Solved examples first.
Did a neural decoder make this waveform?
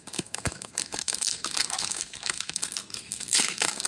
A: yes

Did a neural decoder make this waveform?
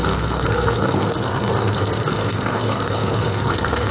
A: yes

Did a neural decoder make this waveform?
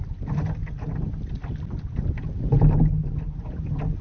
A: no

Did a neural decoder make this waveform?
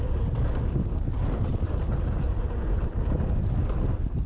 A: no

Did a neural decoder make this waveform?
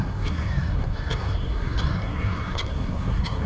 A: yes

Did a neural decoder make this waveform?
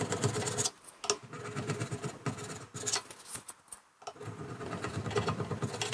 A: no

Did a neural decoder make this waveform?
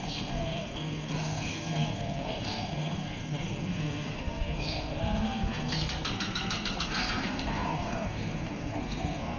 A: yes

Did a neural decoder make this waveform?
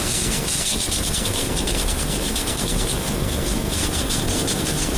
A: yes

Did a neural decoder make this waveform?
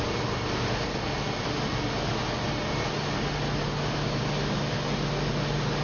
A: no